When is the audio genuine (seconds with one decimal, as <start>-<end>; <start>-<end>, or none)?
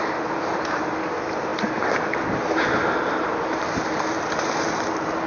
0.0-5.3